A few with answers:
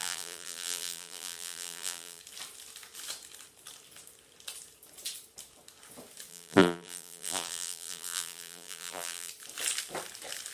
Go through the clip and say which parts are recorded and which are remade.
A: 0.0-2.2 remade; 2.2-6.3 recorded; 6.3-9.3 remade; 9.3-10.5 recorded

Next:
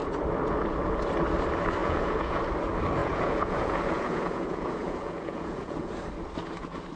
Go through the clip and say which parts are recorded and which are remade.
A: 0.0-1.8 recorded; 1.8-2.4 remade; 2.4-3.0 recorded; 3.0-5.9 remade; 5.9-7.0 recorded

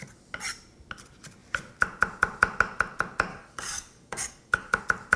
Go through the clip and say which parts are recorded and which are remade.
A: 0.0-3.3 recorded; 3.3-4.8 remade; 4.8-5.2 recorded

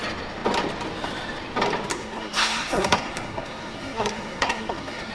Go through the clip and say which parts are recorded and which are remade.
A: 0.0-1.9 recorded; 1.9-5.1 remade